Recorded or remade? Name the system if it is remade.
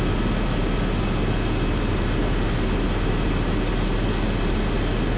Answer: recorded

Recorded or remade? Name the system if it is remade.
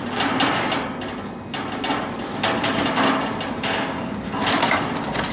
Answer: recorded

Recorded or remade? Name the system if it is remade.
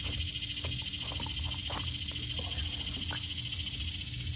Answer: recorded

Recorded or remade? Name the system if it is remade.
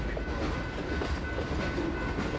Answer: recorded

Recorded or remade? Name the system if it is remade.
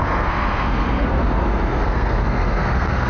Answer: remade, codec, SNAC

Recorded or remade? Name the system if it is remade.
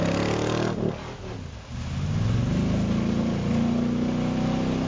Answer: recorded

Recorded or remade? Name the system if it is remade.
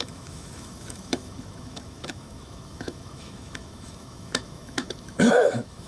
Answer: remade, autoencoder, DAC-VAE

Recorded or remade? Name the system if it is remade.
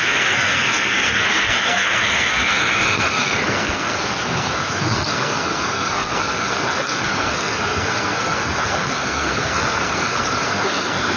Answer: remade, codec, SNAC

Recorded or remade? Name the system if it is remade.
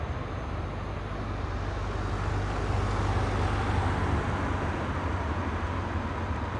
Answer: recorded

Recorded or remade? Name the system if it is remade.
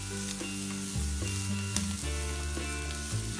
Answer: recorded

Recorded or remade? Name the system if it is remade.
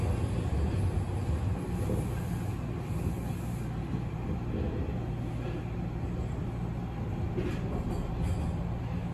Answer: recorded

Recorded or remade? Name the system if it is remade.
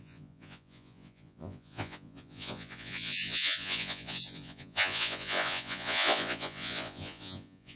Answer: remade, vocoder, Vocos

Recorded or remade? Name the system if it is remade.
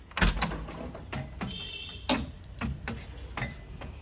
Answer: recorded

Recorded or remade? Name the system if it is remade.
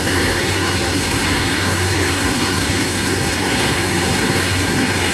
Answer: remade, codec, SNAC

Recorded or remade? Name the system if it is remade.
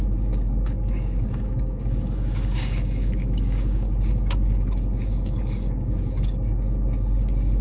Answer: remade, codec, DAC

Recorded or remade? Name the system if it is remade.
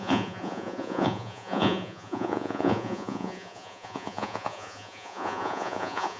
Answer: remade, vocoder, Vocos